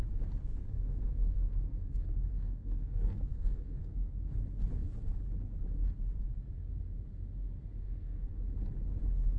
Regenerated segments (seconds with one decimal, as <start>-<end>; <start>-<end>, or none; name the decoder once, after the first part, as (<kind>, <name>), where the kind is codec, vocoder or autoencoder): 0.6-4.1 (codec, SNAC); 7.8-8.4

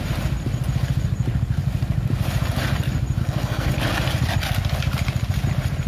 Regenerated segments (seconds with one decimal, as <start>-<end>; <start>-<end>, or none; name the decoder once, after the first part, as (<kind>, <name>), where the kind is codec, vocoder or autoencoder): 3.2-3.7 (codec, SNAC)